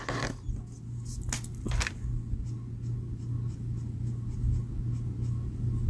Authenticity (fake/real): real